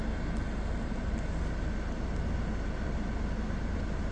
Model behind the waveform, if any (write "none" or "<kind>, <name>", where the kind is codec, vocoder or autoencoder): none